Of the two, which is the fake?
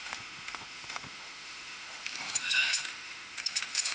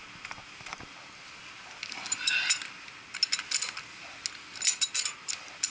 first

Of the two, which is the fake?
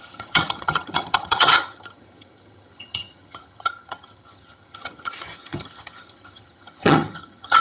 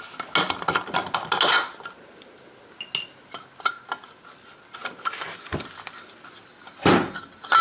first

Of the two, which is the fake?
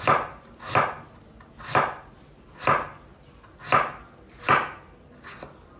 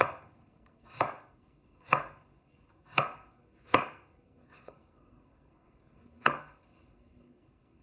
second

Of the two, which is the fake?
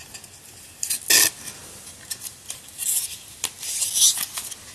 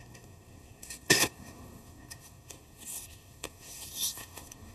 second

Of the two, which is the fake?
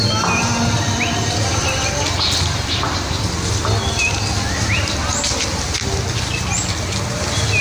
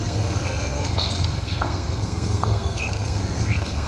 second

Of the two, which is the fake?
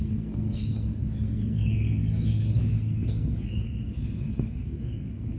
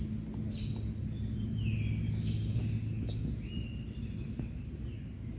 first